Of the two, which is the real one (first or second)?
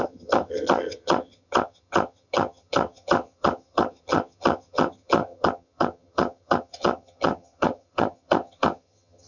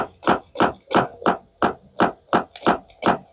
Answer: second